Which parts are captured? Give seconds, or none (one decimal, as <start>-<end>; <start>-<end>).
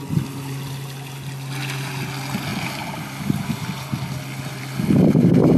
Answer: 0.0-5.6